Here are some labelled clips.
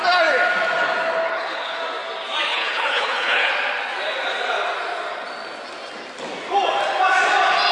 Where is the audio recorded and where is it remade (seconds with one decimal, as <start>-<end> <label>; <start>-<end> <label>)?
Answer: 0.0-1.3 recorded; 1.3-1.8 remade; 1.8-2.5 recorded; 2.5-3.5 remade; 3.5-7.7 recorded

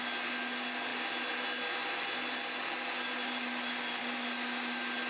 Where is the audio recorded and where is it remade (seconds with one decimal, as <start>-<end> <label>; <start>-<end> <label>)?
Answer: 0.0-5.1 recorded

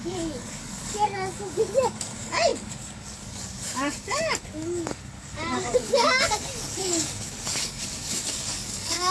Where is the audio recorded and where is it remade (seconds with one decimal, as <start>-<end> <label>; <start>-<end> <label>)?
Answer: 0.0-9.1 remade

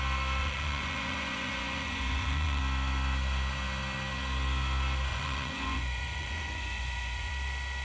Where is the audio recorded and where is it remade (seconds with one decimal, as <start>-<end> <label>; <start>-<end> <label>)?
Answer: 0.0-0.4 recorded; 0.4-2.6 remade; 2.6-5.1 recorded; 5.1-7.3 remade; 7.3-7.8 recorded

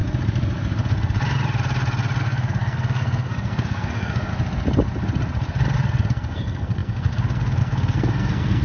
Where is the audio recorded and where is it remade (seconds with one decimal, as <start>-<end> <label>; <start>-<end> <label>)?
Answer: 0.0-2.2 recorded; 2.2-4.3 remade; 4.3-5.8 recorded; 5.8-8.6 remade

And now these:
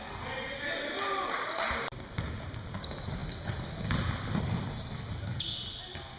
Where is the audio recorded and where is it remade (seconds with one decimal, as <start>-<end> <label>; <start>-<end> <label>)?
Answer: 0.0-6.2 recorded

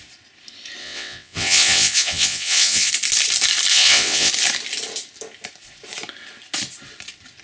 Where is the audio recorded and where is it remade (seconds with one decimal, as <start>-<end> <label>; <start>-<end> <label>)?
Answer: 0.0-0.8 recorded; 0.8-2.9 remade; 2.9-3.7 recorded; 3.7-4.3 remade; 4.3-7.4 recorded

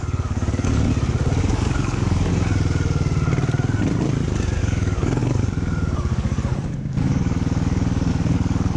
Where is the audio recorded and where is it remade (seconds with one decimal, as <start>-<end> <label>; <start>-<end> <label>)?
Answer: 0.0-0.9 remade; 0.9-1.4 recorded; 1.4-2.3 remade; 2.3-4.6 recorded; 4.6-8.8 remade